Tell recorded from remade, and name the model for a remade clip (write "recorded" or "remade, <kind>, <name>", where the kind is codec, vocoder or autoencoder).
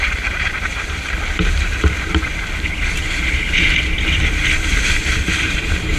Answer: remade, vocoder, BigVGAN v2